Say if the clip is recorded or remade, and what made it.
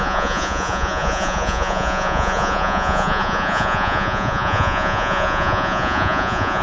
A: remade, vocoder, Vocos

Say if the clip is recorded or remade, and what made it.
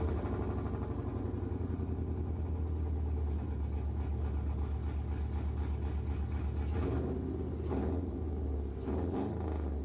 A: recorded